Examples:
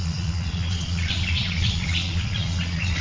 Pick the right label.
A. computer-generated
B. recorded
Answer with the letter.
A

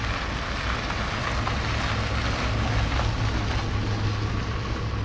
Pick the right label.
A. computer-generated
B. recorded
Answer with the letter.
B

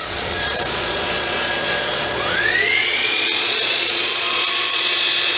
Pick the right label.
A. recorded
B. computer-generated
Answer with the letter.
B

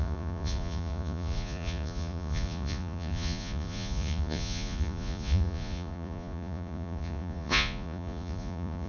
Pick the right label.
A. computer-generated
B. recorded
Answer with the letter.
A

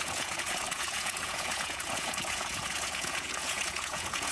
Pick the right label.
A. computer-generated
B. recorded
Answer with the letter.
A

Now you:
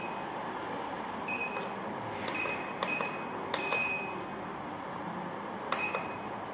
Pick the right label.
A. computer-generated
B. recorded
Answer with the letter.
B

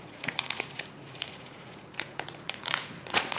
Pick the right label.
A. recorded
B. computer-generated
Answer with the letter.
B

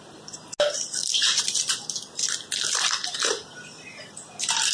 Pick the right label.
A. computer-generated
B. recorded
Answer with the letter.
B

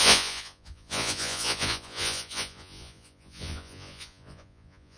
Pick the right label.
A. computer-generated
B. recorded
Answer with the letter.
A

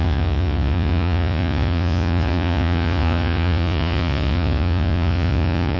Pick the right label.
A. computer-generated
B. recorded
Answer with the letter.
A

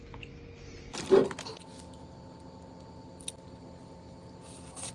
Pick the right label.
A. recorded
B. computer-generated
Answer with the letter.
A